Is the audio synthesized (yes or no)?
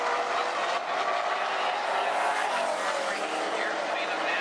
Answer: no